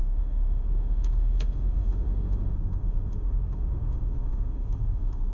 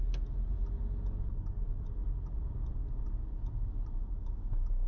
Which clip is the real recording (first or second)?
second